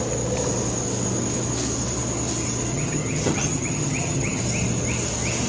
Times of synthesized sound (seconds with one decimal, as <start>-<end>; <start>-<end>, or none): 2.7-4.4